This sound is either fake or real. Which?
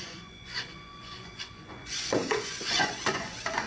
fake